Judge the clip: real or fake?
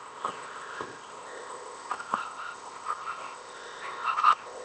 fake